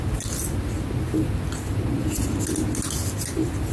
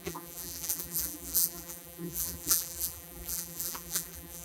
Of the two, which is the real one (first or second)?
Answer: first